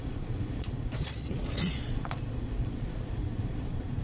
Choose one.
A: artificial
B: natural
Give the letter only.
A